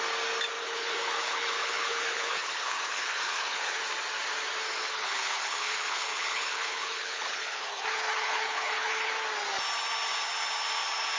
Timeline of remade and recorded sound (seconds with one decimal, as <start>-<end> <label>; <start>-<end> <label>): 0.0-0.6 recorded; 0.6-3.8 remade; 3.8-4.8 recorded; 4.8-9.1 remade; 9.1-11.2 recorded